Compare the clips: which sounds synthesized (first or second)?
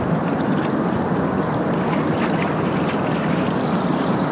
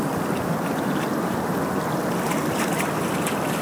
first